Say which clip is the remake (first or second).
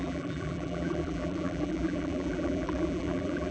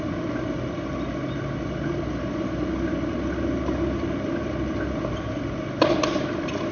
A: first